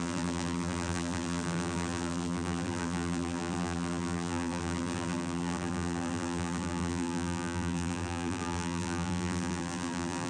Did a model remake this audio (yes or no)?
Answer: yes